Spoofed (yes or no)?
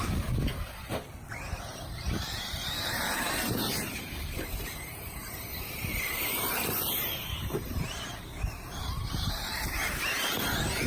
yes